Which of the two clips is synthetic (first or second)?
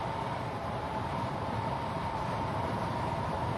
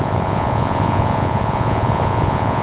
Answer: second